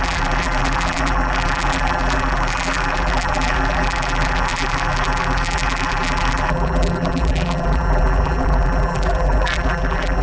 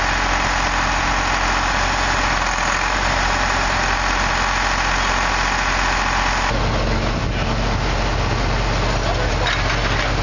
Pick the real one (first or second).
second